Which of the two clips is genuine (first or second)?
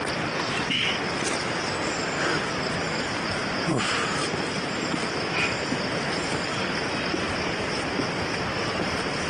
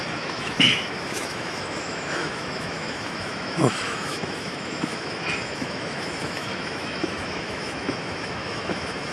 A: first